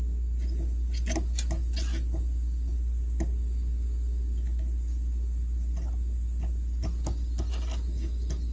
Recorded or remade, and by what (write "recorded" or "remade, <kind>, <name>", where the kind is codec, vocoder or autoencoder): recorded